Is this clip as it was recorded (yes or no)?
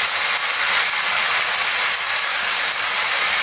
yes